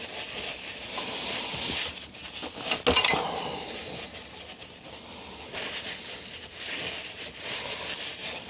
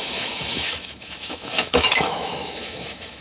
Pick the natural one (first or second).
first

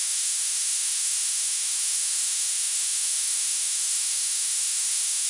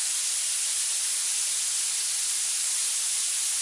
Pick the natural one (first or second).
second